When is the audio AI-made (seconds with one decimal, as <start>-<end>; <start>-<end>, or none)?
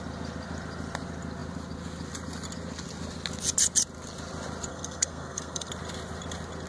4.7-5.7